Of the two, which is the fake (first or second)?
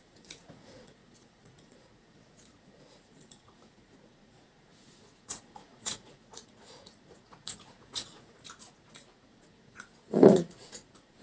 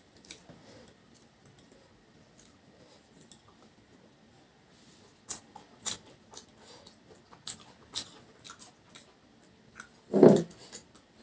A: first